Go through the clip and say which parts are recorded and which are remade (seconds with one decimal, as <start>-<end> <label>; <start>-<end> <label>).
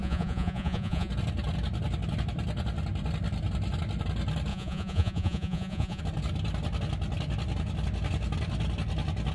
0.0-1.1 remade; 1.1-4.5 recorded; 4.5-6.0 remade; 6.0-9.3 recorded